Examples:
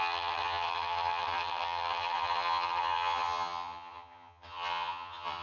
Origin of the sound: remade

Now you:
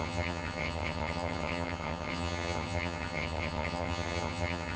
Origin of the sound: remade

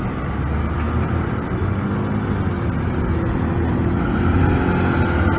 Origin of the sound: recorded